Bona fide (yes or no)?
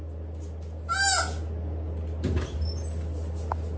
yes